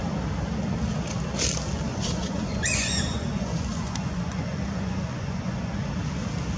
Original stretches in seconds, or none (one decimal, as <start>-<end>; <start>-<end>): 0.0-1.9; 5.9-6.6